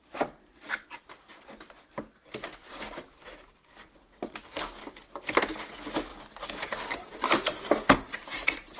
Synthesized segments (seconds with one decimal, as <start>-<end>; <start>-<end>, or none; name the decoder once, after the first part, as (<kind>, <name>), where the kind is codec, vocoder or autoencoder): none